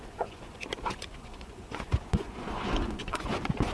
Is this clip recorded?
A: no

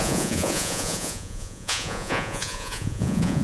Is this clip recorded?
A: no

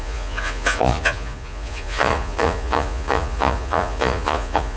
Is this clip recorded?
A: no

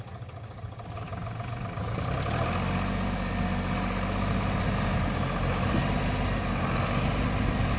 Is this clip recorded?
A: yes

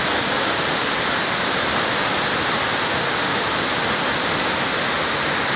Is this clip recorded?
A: yes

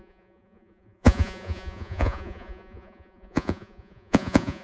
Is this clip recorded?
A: no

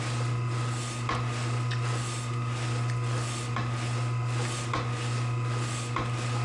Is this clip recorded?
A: yes